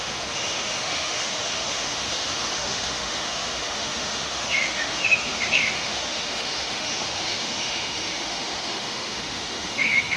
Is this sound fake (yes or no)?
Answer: yes